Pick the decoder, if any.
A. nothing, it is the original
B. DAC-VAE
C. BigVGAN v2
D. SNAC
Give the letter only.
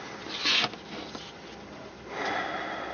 A